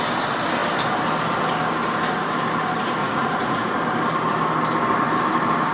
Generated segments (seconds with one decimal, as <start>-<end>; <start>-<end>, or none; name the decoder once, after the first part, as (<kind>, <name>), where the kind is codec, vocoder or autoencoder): 3.0-3.7 (vocoder, Vocos)